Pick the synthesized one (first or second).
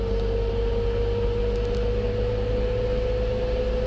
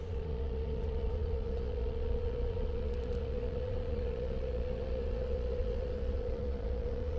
second